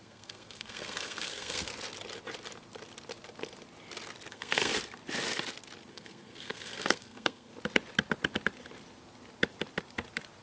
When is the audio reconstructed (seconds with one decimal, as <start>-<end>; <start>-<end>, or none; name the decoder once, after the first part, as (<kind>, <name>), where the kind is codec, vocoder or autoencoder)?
0.0-1.7 (codec, SNAC); 4.3-4.7; 5.9-7.5